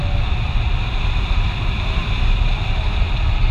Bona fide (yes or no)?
yes